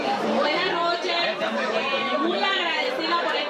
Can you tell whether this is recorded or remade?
remade